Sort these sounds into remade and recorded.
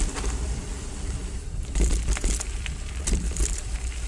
remade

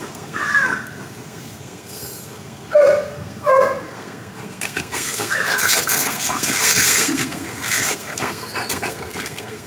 remade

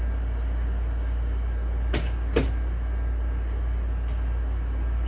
recorded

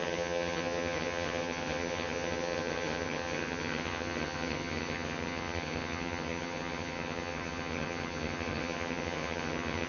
remade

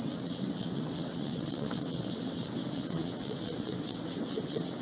remade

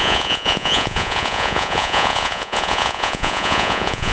remade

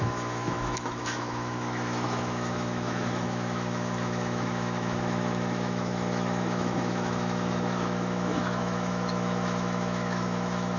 remade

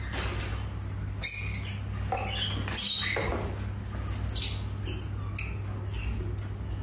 recorded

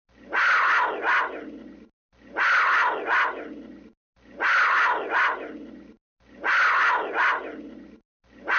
recorded